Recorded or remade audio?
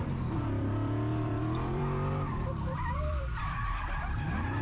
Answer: remade